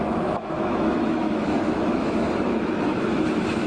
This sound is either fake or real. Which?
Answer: fake